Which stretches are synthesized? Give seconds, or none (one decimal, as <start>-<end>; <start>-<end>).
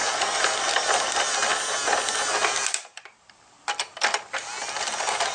none